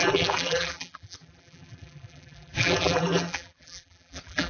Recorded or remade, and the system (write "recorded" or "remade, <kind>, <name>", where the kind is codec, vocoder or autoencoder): remade, vocoder, BigVGAN v2